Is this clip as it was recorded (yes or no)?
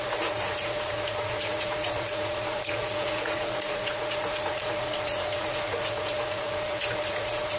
no